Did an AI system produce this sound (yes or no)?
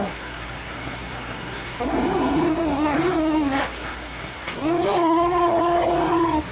yes